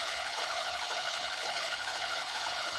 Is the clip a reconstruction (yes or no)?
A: yes